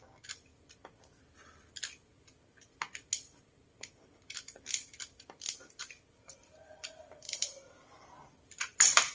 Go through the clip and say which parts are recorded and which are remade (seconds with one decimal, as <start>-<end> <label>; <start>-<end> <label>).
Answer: 0.0-5.8 recorded; 5.8-7.6 remade; 7.6-9.1 recorded